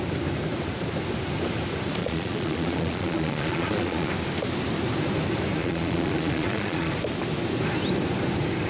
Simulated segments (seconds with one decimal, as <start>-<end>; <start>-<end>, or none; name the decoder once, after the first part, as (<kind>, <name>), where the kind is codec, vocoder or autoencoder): 2.0-4.1 (vocoder, Vocos); 5.6-6.9